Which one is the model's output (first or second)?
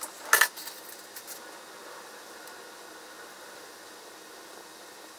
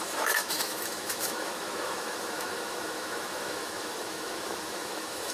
second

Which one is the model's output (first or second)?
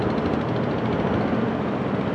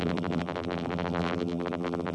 second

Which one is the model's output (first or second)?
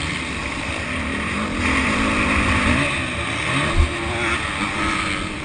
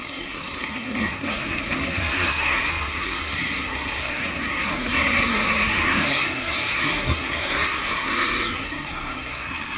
second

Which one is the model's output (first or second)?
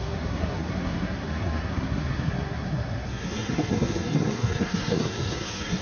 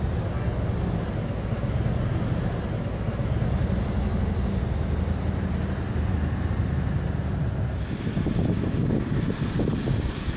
first